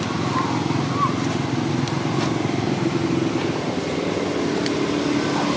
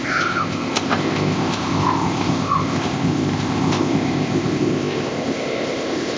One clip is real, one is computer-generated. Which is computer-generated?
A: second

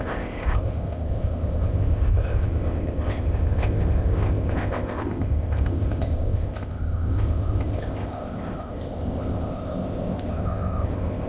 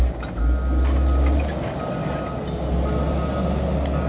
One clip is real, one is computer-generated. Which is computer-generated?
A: first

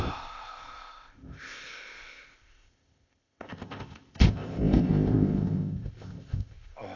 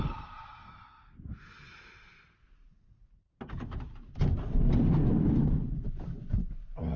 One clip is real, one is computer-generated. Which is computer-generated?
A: first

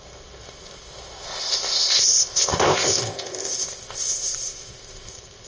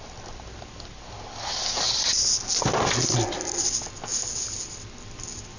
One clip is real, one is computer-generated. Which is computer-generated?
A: first